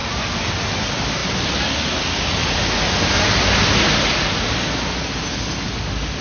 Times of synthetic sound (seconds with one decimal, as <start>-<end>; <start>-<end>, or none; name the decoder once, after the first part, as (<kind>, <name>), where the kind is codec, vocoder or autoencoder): none